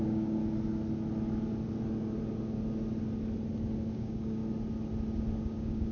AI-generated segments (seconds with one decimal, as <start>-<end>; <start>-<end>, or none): 0.0-0.4; 3.9-4.4; 5.4-5.9